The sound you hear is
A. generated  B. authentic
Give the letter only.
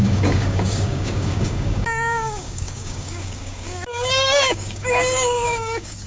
A